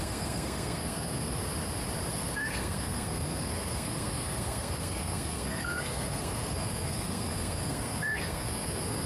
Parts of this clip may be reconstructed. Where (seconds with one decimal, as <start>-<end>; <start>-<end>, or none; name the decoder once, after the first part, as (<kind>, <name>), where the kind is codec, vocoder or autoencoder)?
0.0-1.4 (codec, SNAC); 2.1-9.1